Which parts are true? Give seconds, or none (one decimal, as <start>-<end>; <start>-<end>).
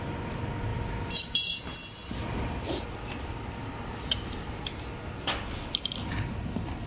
0.0-0.7; 1.6-6.9